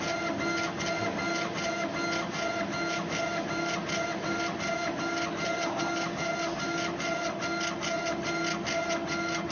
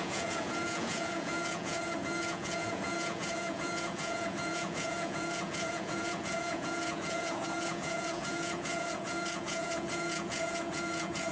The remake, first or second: second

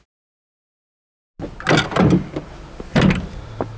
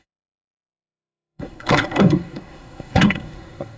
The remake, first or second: second